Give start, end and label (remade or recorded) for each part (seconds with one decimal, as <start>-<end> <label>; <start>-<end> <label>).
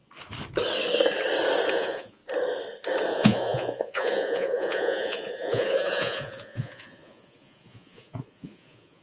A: 0.0-1.7 recorded; 1.7-2.2 remade; 2.2-3.1 recorded; 3.1-9.0 remade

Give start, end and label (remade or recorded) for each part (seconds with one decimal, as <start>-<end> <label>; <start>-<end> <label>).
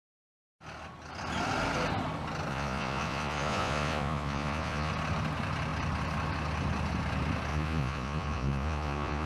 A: 0.0-2.5 recorded; 2.5-4.9 remade; 4.9-7.5 recorded; 7.5-9.3 remade